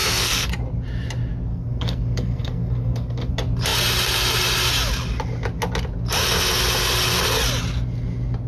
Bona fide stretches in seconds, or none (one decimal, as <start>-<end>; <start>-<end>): 0.5-1.5; 3.3-8.5

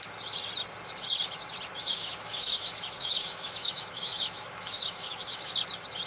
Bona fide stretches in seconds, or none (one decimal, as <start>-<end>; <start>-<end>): 0.0-1.8; 5.5-6.1

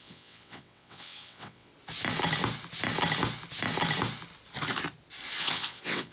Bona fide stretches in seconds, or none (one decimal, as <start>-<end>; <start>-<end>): 1.7-5.4

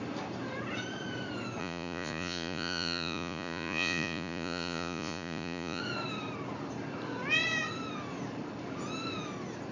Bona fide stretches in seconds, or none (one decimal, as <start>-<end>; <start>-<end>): 0.0-1.6; 5.8-9.7

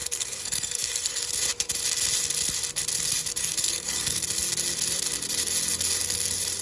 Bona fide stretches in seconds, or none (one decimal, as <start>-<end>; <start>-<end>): 1.3-3.4; 4.2-6.6

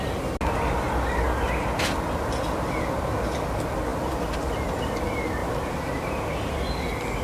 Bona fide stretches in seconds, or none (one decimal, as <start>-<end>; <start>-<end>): 0.0-5.4; 6.1-7.2

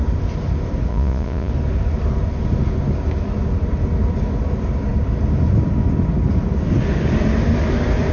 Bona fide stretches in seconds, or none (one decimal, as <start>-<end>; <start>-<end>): 0.0-0.9; 1.5-8.1